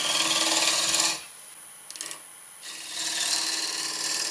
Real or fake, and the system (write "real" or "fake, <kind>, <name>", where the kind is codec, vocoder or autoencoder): real